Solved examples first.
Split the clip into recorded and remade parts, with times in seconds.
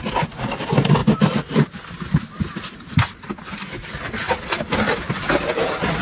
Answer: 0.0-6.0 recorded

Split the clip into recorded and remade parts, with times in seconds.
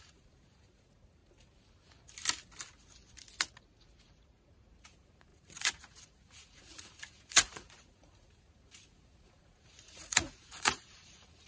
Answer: 0.0-1.2 remade; 1.2-4.2 recorded; 4.2-11.5 remade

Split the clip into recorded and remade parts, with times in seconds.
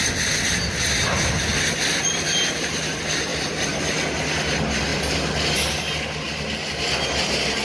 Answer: 0.0-1.5 recorded; 1.5-2.8 remade; 2.8-3.3 recorded; 3.3-3.8 remade; 3.8-7.6 recorded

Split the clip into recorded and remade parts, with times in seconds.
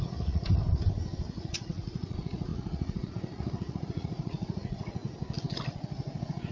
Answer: 0.0-0.6 remade; 0.6-1.4 recorded; 1.4-5.0 remade; 5.0-6.5 recorded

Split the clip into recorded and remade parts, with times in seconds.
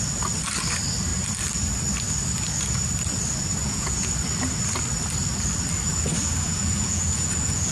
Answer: 0.0-3.6 recorded; 3.6-4.1 remade; 4.1-6.2 recorded; 6.2-7.7 remade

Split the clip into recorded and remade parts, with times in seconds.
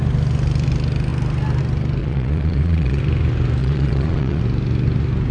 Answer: 0.0-2.0 recorded; 2.0-3.0 remade; 3.0-3.6 recorded; 3.6-4.4 remade; 4.4-5.3 recorded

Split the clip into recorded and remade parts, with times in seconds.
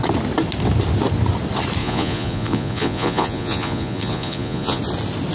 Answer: 0.0-1.8 recorded; 1.8-4.8 remade; 4.8-5.3 recorded